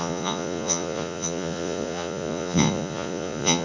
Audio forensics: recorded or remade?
remade